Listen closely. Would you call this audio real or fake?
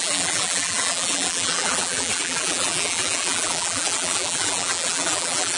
fake